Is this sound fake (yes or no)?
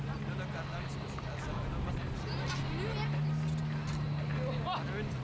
no